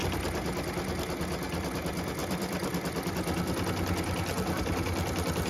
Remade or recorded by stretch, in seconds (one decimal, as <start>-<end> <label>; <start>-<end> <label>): 0.0-2.2 recorded; 2.2-3.1 remade; 3.1-5.5 recorded